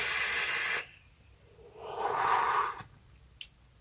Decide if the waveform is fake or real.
real